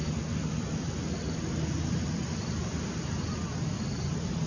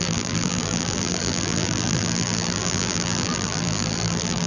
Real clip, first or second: first